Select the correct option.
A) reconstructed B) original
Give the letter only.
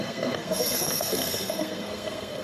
A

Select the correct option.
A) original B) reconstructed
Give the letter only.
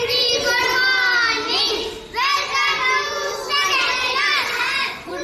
B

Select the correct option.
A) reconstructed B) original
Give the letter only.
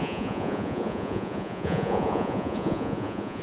A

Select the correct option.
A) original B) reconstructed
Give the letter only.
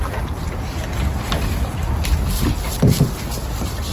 A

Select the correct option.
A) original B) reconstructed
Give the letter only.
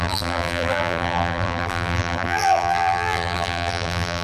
B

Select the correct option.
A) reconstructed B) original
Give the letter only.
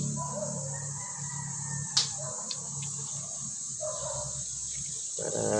B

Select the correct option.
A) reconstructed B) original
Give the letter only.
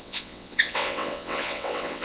A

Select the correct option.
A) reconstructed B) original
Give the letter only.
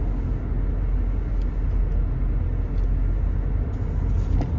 B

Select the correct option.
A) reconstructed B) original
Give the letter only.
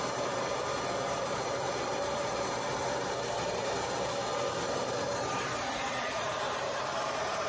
A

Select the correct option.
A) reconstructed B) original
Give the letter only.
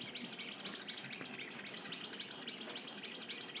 B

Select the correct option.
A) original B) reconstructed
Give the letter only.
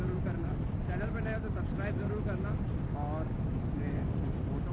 A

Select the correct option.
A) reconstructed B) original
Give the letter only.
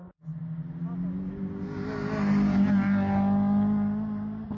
B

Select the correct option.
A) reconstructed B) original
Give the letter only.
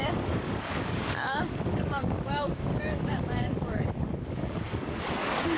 A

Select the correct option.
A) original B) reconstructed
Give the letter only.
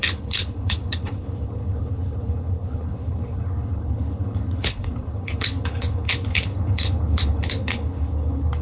B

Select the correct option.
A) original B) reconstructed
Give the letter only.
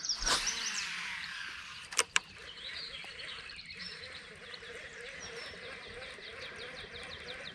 B